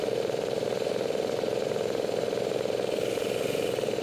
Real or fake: real